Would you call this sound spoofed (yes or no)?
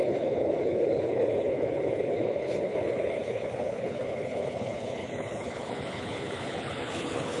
yes